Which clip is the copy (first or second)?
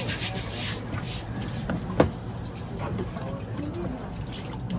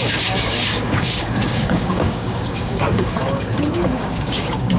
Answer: second